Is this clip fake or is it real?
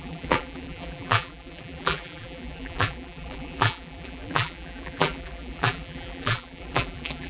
fake